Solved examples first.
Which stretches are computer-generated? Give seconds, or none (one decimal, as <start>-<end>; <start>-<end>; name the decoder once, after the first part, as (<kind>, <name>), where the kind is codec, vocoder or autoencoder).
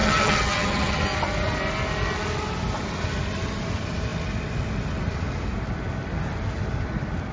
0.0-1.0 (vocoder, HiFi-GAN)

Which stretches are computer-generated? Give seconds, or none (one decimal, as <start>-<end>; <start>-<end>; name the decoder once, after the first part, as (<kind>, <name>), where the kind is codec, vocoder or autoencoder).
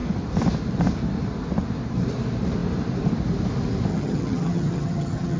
3.9-5.4 (vocoder, HiFi-GAN)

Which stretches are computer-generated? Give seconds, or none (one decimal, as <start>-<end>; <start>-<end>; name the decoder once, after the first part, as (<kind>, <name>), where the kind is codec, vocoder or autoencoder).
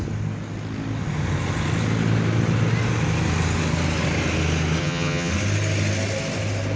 4.8-5.3 (vocoder, HiFi-GAN)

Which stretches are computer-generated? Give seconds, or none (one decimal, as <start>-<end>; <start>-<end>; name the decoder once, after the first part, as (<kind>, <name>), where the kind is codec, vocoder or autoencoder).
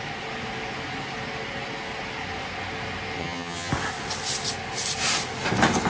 3.2-3.7 (vocoder, HiFi-GAN)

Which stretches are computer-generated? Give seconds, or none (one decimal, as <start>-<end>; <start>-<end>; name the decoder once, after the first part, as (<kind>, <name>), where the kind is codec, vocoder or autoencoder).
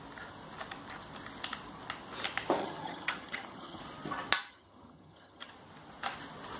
2.6-3.8 (vocoder, HiFi-GAN); 4.5-5.5